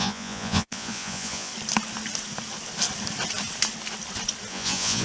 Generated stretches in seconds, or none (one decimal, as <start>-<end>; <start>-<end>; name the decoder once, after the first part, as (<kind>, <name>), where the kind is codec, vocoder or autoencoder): 0.0-1.5 (vocoder, Vocos); 4.5-5.0